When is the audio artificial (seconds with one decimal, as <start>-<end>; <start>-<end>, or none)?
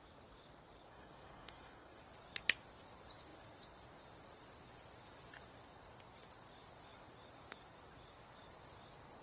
0.9-2.0